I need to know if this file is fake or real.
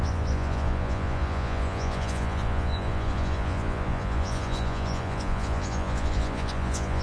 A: fake